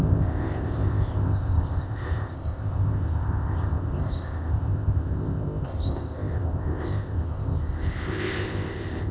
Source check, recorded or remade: remade